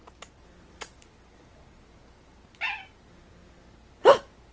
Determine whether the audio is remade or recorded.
recorded